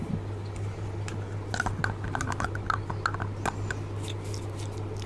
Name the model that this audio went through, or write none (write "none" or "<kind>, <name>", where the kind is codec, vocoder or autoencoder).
none